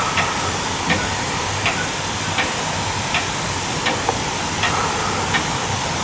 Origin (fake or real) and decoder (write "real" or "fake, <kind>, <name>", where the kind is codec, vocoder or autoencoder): real